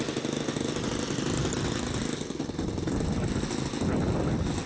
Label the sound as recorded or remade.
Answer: recorded